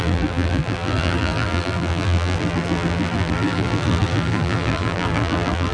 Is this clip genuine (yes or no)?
no